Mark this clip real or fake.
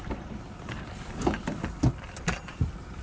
real